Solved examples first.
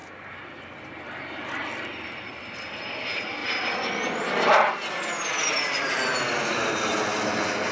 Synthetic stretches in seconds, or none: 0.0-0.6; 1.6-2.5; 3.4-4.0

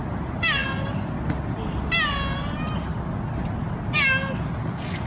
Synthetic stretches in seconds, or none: none

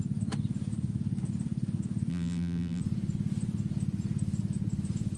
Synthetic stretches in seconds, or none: 2.1-2.8

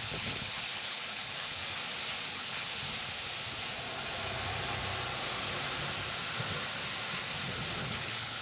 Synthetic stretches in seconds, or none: 0.0-1.6; 2.3-2.8; 7.8-8.4

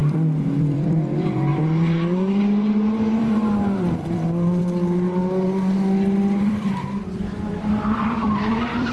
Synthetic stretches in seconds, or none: 0.6-1.5; 2.4-4.6; 6.4-8.9

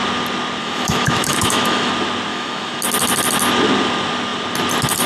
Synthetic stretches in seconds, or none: 0.6-1.9; 2.3-2.8

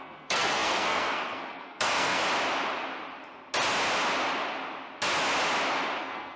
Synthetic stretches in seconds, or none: 0.0-2.2; 6.0-6.4